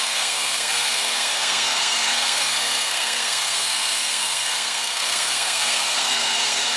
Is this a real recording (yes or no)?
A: no